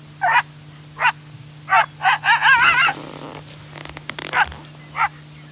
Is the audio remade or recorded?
recorded